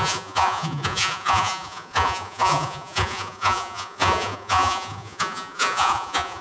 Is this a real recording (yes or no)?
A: no